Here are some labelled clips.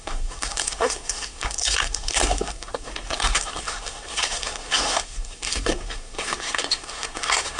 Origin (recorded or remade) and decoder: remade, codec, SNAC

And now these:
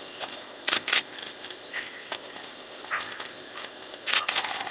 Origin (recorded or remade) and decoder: remade, codec, ZipCodec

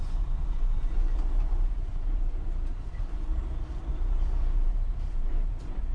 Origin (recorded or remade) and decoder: remade, vocoder, BigVGAN v2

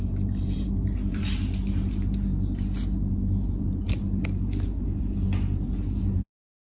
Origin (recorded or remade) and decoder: remade, vocoder, BigVGAN v2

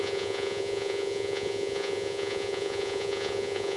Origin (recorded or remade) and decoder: remade, vocoder, Vocos